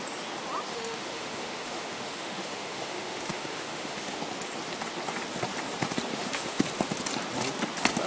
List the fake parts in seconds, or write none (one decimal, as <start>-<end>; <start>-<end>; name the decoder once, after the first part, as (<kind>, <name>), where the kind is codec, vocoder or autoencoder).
0.7-4.2 (autoencoder, DAC-VAE); 6.1-6.6